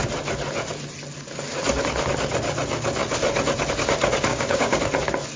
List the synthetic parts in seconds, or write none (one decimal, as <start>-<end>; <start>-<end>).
4.3-4.8